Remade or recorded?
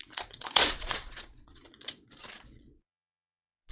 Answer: remade